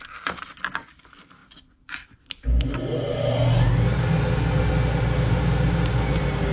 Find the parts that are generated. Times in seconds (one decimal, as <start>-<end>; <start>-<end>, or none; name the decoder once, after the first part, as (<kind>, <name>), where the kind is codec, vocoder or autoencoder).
none